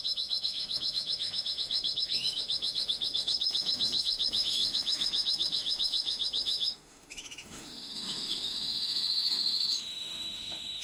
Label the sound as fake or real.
fake